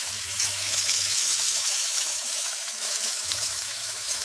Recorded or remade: remade